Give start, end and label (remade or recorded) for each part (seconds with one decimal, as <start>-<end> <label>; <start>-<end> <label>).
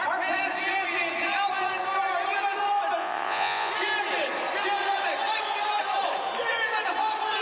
0.0-3.0 recorded; 3.0-3.7 remade; 3.7-7.4 recorded